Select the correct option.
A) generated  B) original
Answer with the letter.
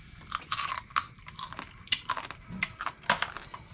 B